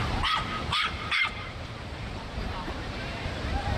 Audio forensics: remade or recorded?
remade